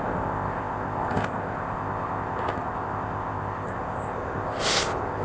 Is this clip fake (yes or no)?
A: yes